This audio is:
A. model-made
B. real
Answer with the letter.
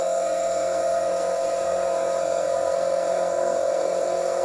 A